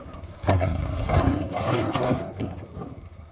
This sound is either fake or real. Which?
fake